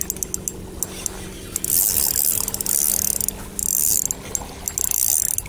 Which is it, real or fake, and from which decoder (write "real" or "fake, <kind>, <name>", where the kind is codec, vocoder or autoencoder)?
real